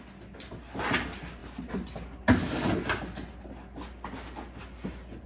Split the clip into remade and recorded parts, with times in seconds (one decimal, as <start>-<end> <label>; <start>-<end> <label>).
0.0-5.3 recorded